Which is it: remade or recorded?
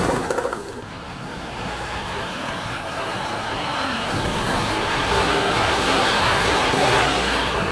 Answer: remade